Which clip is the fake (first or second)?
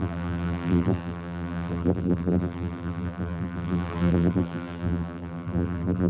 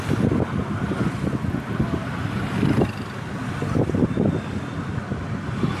first